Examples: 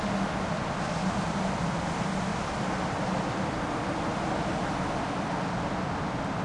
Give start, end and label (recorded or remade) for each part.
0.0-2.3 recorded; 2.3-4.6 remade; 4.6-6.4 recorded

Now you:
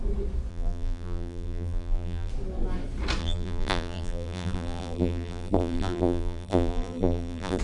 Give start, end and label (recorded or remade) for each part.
0.0-0.5 recorded; 0.5-2.3 remade; 2.3-3.2 recorded; 3.2-7.6 remade